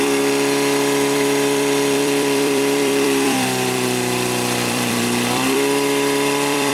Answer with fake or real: fake